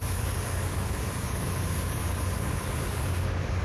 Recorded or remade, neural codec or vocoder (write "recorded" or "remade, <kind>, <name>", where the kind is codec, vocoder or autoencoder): remade, codec, DAC